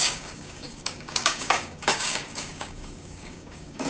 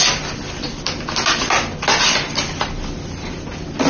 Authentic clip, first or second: second